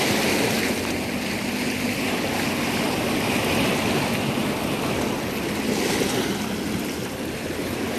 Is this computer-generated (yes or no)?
no